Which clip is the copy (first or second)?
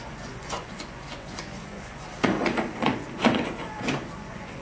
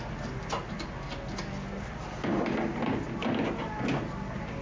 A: first